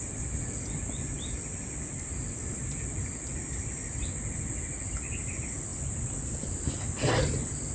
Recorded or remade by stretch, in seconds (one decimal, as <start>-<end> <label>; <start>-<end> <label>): 0.0-7.7 recorded